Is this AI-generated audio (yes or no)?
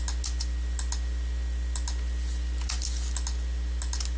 no